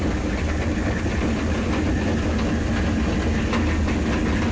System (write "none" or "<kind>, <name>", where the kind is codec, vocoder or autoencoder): none